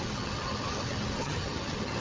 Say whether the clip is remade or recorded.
remade